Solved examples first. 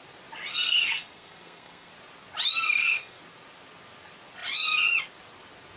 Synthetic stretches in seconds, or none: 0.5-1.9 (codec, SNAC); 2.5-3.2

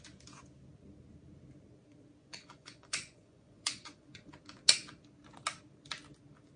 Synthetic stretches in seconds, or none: 2.2-4.3 (vocoder, Vocos)